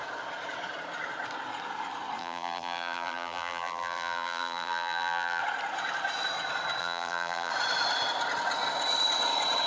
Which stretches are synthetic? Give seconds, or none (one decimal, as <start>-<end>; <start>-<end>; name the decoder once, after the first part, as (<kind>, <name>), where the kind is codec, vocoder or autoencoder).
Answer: 2.2-5.4 (vocoder, BigVGAN v2); 6.8-7.5